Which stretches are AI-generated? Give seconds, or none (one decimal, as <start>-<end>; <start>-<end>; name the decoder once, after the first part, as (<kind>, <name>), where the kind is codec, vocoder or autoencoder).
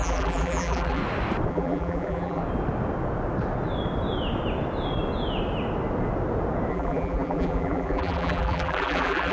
0.0-1.0 (vocoder, BigVGAN v2); 1.5-2.4; 6.7-9.3